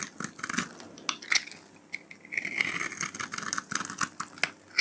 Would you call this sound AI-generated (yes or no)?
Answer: no